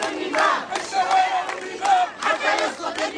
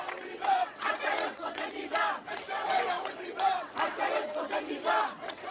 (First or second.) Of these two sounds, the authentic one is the first